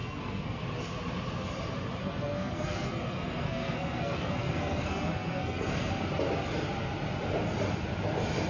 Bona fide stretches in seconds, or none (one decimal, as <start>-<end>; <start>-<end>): 0.6-2.0; 5.9-8.5